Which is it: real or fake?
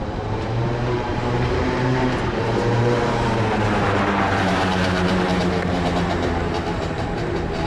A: fake